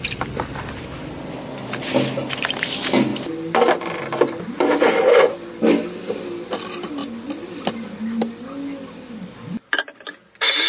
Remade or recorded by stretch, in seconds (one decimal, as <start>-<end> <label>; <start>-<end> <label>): 0.0-10.7 recorded